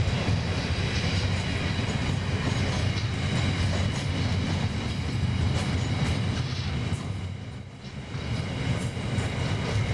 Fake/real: real